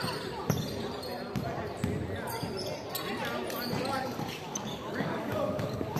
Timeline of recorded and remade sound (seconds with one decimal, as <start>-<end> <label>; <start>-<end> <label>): 0.0-3.9 recorded; 3.9-6.0 remade